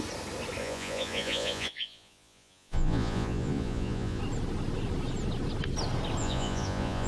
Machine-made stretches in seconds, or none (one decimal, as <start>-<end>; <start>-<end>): 0.6-4.2; 6.2-7.1

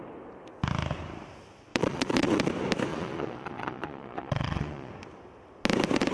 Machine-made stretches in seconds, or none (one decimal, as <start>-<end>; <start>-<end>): 1.7-2.5; 2.9-4.9